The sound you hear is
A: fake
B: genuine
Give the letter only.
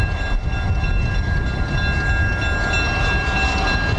B